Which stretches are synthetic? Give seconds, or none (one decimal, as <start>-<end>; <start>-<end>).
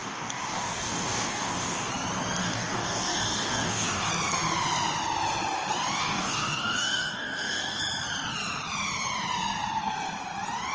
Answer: 0.0-1.9; 2.4-4.1; 6.0-7.8